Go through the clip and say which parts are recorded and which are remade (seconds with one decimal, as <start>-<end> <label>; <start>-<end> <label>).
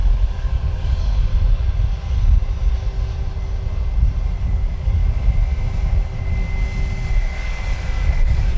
0.0-1.3 remade; 1.3-4.4 recorded; 4.4-5.0 remade; 5.0-7.2 recorded; 7.2-8.6 remade